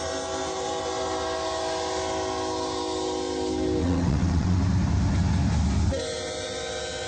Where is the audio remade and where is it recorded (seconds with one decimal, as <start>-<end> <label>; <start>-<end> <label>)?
0.0-3.8 recorded; 3.8-4.6 remade; 4.6-7.1 recorded